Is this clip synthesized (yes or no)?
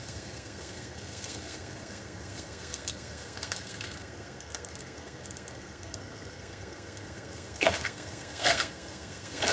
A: yes